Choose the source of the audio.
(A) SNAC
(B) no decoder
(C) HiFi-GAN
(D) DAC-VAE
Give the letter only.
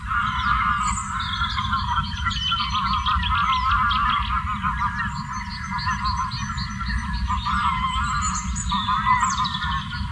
B